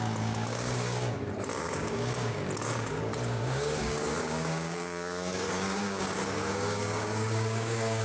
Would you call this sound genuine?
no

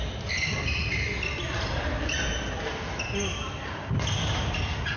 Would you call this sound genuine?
yes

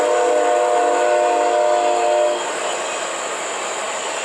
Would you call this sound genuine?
yes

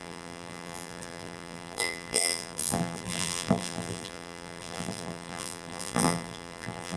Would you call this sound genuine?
no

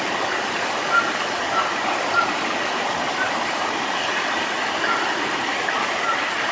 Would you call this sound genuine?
yes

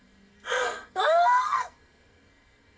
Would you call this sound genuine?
no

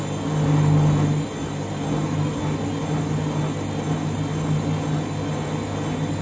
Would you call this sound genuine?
yes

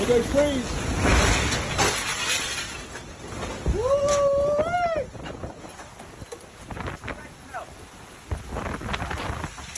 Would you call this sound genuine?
yes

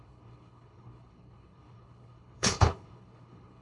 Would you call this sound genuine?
no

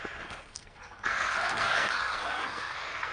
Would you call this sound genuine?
no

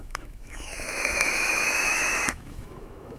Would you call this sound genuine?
no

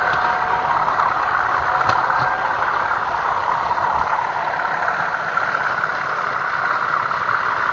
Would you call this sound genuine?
yes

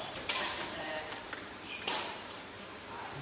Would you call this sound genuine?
no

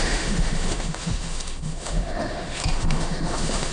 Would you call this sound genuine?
no